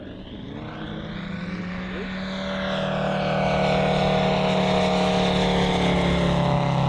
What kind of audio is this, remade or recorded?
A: recorded